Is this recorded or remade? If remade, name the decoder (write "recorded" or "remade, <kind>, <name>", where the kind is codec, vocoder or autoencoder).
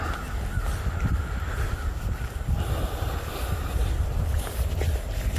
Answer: recorded